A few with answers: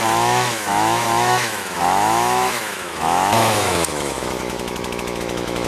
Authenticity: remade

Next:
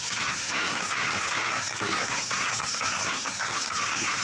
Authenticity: remade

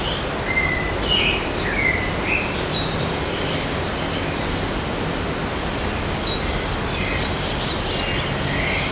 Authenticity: recorded